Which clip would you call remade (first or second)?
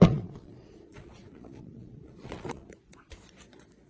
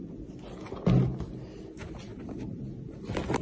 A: first